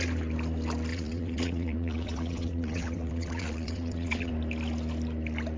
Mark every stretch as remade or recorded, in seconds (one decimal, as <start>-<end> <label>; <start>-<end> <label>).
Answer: 0.0-0.9 recorded; 0.9-4.3 remade; 4.3-5.6 recorded